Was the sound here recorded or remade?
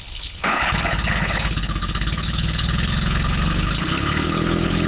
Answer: remade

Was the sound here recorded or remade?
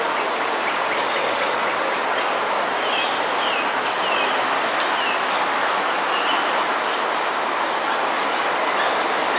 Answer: recorded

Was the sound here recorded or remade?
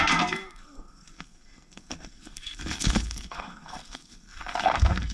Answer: remade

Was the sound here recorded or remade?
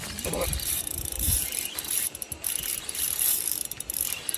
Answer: remade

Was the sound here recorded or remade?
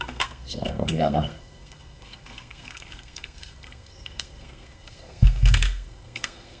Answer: remade